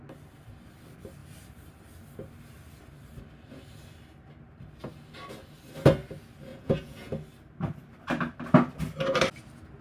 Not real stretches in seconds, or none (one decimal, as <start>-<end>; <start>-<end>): 6.5-7.1